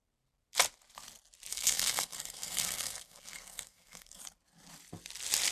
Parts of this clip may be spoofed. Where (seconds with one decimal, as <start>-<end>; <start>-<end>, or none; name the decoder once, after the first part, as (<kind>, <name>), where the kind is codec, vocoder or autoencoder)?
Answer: 1.5-4.2 (codec, SNAC)